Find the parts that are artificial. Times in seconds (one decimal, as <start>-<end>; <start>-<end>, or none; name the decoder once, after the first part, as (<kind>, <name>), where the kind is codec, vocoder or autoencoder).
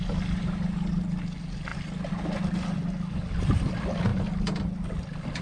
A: none